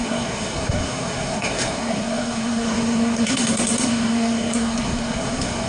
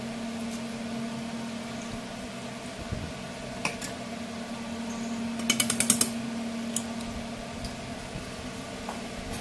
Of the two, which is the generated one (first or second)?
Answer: first